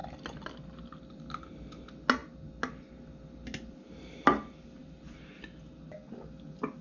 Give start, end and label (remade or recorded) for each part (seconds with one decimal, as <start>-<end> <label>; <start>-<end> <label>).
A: 0.0-6.8 recorded